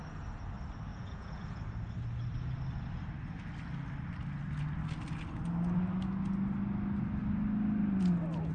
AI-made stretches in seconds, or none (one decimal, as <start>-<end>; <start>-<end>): 0.9-1.6